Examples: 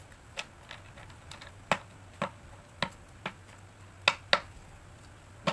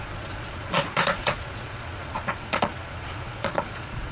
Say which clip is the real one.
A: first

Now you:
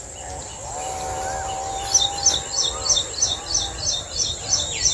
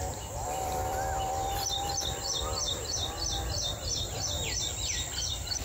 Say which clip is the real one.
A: first